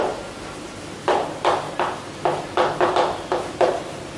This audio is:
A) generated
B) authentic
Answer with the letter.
B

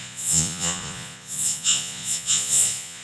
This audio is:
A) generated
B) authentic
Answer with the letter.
A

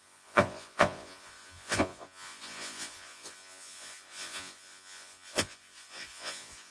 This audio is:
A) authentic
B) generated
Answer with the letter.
B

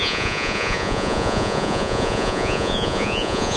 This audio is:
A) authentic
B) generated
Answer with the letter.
B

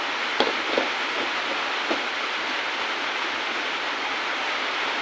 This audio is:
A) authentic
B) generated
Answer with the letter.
A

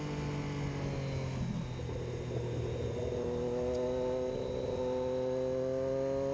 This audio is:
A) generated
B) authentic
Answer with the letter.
B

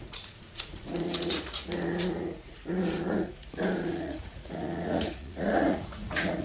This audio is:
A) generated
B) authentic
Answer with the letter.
A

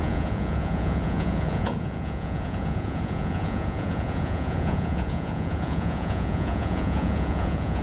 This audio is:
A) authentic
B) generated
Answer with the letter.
B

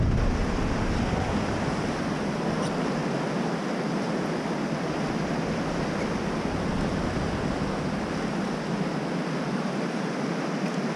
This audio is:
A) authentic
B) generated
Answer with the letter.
A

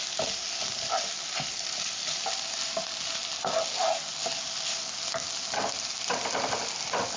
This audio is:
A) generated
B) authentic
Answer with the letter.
B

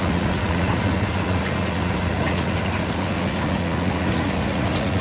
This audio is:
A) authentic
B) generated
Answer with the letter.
B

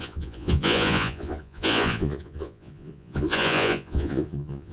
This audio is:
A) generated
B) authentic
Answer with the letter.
A